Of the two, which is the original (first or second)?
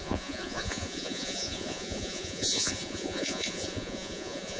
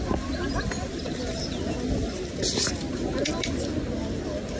second